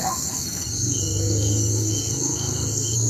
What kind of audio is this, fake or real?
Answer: fake